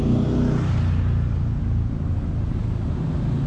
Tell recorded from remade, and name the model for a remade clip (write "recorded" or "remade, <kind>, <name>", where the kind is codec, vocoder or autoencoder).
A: recorded